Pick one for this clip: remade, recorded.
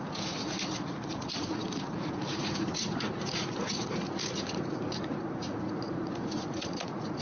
remade